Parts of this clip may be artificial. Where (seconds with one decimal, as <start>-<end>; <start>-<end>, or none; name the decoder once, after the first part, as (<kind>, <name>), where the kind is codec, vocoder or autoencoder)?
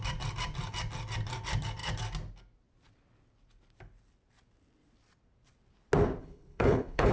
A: 6.2-7.1 (codec, HILCodec)